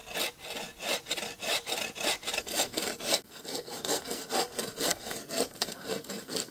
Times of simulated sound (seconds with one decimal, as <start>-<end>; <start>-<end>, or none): 2.4-6.5